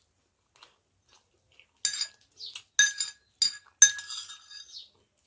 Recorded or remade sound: recorded